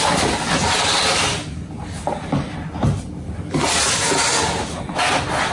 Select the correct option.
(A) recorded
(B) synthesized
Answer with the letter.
A